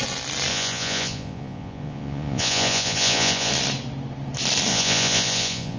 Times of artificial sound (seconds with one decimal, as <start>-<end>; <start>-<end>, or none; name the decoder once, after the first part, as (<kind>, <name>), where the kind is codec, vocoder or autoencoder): 0.5-3.5 (vocoder, Vocos); 4.7-5.8